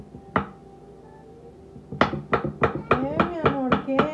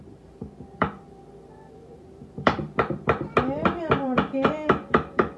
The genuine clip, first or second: first